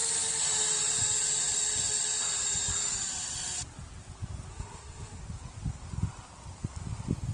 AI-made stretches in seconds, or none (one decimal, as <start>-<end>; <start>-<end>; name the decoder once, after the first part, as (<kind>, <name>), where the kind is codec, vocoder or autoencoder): 4.5-5.2 (codec, SNAC)